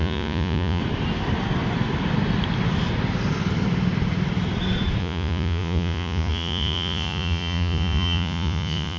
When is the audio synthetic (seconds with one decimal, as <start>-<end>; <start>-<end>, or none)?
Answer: 0.0-0.8; 5.0-9.0